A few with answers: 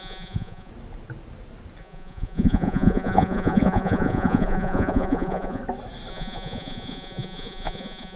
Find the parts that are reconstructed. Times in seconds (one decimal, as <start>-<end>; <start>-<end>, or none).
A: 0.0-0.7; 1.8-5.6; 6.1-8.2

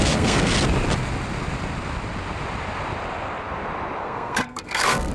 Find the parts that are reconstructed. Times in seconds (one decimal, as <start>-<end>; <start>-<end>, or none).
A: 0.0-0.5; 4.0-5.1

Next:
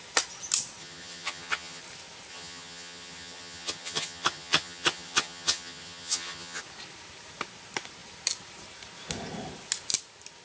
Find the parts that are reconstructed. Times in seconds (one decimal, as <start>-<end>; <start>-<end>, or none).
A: 0.8-1.8; 2.3-6.6